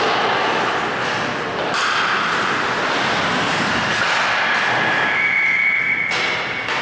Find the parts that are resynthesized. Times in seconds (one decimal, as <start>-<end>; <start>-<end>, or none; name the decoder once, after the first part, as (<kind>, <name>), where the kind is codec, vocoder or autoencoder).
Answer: none